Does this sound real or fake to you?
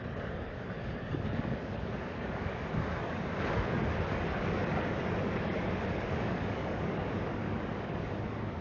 fake